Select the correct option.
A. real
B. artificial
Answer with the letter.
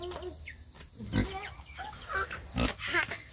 A